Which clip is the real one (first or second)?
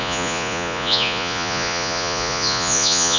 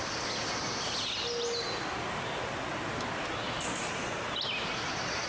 second